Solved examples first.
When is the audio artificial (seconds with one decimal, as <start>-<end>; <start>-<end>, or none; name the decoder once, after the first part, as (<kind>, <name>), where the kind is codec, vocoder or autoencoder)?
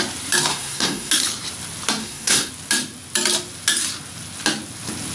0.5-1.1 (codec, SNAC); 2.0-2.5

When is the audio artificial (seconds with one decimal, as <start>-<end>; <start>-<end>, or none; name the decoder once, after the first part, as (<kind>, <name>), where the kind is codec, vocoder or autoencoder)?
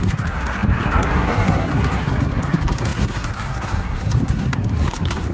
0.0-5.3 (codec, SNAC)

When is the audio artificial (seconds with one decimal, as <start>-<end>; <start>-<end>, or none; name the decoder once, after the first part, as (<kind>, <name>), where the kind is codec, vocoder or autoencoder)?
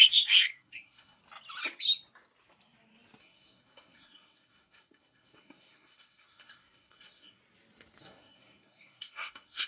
0.0-1.2 (codec, SNAC); 3.2-7.4; 8.0-9.7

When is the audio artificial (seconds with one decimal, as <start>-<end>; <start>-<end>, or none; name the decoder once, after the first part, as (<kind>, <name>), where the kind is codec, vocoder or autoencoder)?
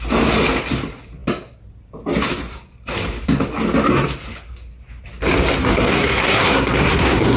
5.6-7.4 (codec, SNAC)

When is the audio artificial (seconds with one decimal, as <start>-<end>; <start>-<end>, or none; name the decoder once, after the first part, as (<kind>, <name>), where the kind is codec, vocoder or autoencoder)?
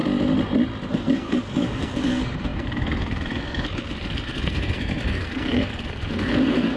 0.9-6.8 (codec, SNAC)